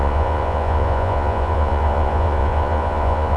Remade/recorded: remade